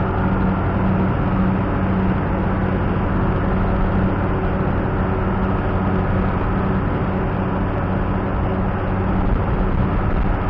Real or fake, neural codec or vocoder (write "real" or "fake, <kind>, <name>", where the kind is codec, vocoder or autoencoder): real